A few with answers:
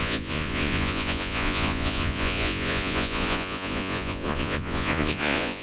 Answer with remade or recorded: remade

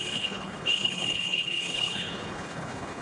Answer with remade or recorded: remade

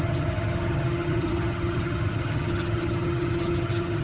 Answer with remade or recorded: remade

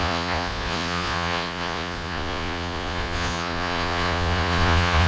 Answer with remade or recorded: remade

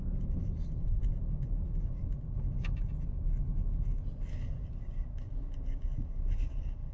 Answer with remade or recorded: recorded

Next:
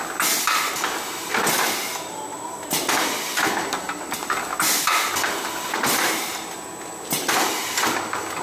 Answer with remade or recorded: recorded